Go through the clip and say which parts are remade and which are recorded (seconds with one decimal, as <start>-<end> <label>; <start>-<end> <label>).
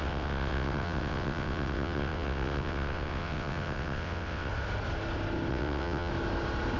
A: 0.0-4.5 remade; 4.5-5.5 recorded; 5.5-6.1 remade; 6.1-6.8 recorded